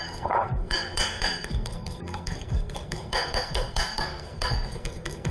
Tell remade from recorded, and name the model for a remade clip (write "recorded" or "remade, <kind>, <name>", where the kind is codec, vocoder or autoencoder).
remade, codec, SNAC